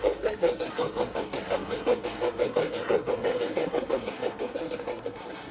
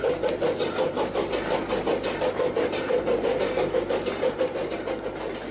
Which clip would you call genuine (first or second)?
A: second